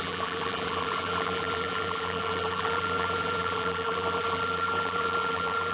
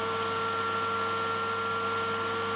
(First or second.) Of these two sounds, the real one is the second